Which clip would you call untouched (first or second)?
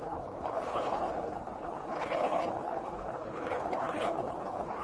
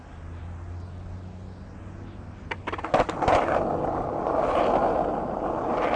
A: second